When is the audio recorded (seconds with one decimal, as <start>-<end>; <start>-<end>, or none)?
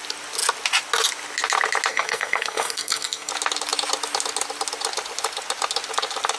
0.0-1.9; 3.3-6.4